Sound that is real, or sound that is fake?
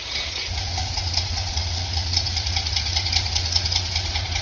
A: fake